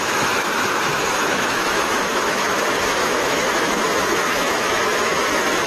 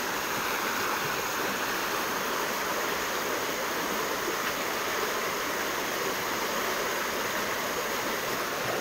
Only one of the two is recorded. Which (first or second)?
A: second